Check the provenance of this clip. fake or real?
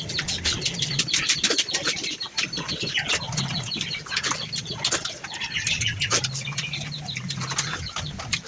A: real